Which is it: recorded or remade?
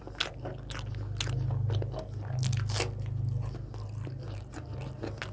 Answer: recorded